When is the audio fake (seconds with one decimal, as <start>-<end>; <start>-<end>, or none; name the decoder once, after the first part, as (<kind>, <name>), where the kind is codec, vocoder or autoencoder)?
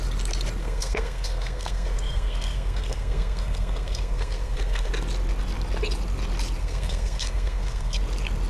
0.6-4.9 (codec, SNAC); 6.6-8.0